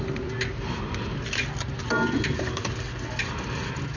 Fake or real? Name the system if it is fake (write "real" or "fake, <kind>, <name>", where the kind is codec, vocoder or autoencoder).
real